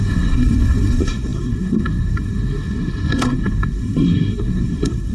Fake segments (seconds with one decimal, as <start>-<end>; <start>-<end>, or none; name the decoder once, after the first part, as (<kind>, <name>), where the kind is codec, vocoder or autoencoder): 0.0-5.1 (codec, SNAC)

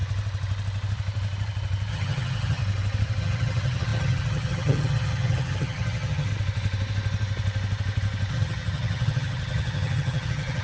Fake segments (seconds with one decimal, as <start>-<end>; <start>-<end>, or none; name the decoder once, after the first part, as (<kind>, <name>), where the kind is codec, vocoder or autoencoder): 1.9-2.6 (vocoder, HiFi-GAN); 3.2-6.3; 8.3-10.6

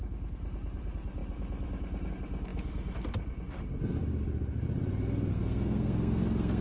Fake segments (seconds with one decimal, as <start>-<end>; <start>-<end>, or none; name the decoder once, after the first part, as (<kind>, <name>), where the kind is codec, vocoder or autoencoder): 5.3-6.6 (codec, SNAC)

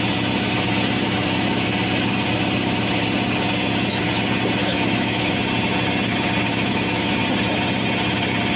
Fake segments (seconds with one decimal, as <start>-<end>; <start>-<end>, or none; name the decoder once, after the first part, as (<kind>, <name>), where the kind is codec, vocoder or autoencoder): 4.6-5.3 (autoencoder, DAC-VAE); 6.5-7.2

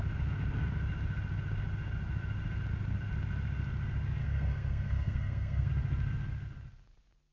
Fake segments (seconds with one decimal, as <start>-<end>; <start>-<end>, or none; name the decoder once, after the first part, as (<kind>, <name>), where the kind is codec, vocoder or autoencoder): 4.2-5.7 (codec, SNAC)

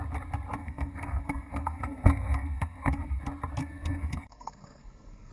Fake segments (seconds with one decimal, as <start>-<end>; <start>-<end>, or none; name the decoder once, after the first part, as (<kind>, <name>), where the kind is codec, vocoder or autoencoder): 0.6-3.2 (codec, SNAC); 3.6-5.3

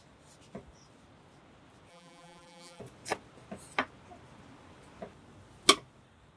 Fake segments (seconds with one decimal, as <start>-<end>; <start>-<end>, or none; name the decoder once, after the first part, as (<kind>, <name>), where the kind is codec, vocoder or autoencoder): 1.9-2.8 (vocoder, BigVGAN v2)